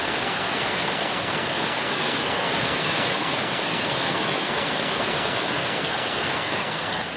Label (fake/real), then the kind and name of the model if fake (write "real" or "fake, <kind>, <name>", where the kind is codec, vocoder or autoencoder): fake, codec, SNAC